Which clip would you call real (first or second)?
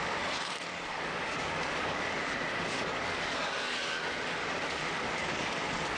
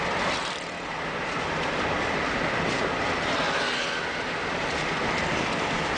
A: second